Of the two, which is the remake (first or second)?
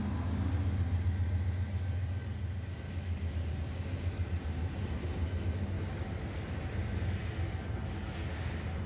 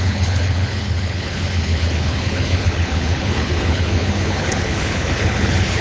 second